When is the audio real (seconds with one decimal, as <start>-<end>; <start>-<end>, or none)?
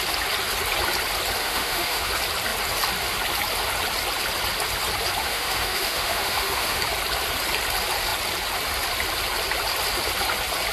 0.0-1.4; 2.1-5.2; 6.8-10.7